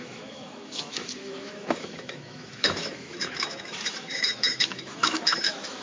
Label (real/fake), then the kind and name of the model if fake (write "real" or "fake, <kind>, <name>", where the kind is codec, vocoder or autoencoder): fake, autoencoder, DAC-VAE